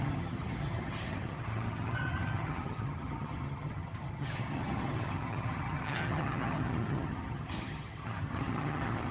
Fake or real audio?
fake